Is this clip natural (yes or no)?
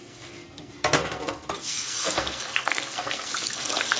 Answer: no